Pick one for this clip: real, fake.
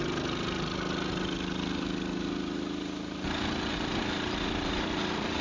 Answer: real